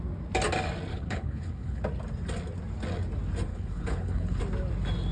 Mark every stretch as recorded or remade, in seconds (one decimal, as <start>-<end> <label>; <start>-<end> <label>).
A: 0.0-0.9 recorded; 0.9-1.8 remade; 1.8-3.5 recorded; 3.5-4.4 remade; 4.4-5.1 recorded